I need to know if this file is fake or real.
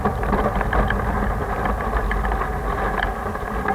real